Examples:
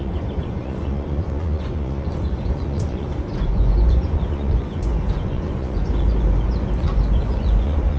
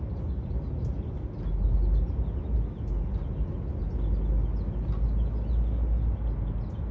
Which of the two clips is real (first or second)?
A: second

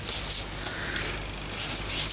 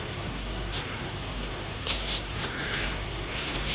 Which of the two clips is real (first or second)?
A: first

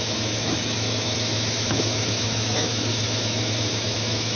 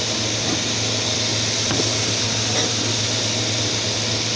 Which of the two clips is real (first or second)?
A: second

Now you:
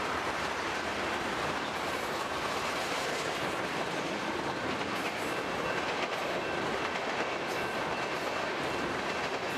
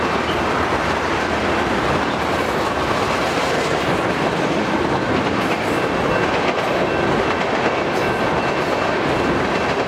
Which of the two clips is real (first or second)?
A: second